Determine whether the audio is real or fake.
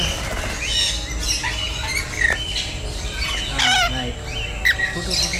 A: real